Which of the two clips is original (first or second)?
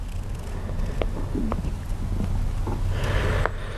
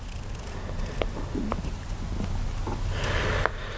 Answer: first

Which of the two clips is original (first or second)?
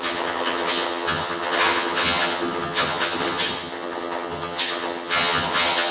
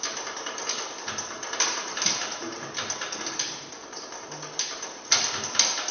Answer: second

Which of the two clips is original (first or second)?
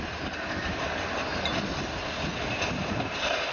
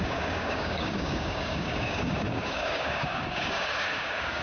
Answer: first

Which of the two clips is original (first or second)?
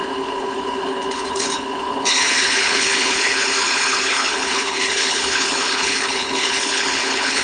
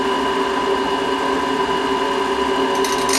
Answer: second